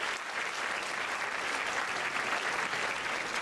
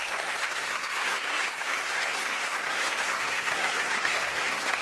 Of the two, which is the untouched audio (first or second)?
first